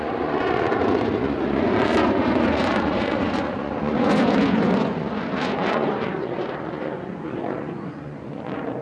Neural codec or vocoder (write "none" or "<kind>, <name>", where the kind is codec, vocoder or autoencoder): vocoder, Vocos